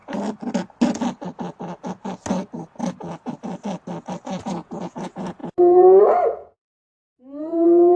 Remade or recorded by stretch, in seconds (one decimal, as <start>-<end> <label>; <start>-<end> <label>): 0.0-4.4 recorded; 4.4-8.0 remade